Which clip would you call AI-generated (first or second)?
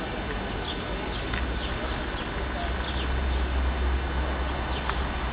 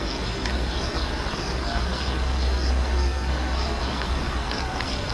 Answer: second